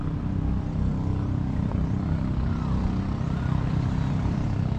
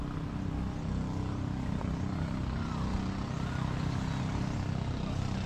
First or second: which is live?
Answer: second